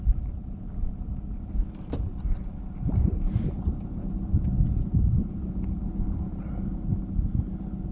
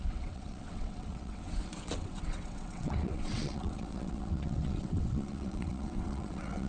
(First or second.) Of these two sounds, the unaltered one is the first